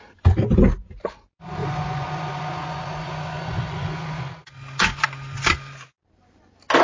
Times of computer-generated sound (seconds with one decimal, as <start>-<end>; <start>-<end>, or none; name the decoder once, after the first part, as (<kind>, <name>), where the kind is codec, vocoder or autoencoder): 1.6-4.2 (vocoder, Vocos)